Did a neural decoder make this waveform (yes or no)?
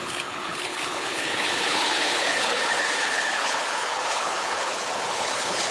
yes